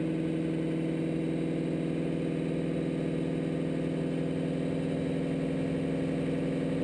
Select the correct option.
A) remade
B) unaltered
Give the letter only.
B